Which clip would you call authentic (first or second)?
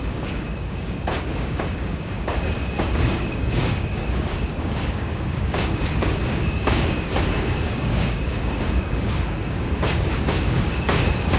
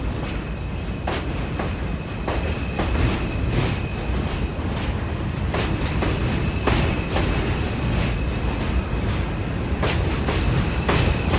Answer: second